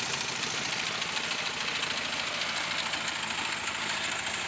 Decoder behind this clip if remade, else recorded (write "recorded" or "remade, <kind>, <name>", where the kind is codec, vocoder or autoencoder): recorded